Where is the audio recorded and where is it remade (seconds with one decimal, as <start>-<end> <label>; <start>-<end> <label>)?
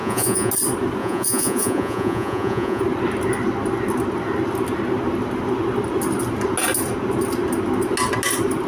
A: 0.0-0.5 remade; 0.5-1.0 recorded; 1.0-2.8 remade; 2.8-8.7 recorded